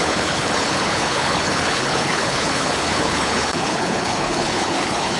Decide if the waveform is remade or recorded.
remade